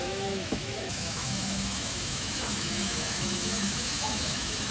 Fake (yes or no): yes